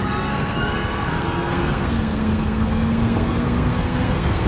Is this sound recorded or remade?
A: remade